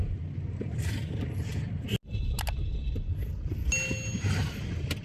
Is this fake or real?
real